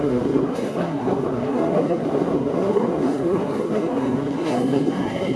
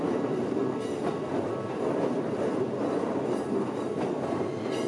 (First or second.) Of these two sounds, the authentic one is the second